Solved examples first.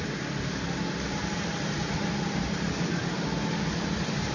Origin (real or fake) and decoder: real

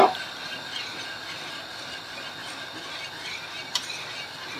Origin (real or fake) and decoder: real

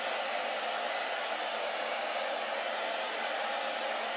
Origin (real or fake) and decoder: real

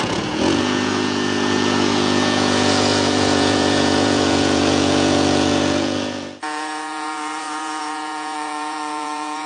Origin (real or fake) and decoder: fake, vocoder, Vocos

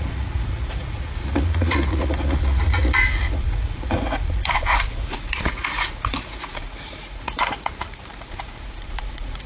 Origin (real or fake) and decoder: fake, vocoder, Vocos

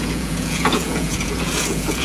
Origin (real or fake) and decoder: fake, vocoder, Vocos